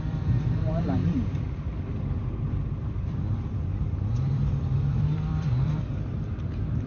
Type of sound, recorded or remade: remade